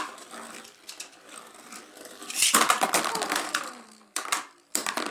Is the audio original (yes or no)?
no